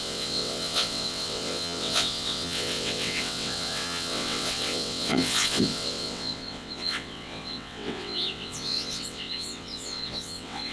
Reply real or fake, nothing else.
fake